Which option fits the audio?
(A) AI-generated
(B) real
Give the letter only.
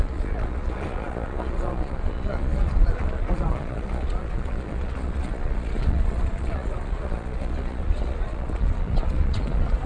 A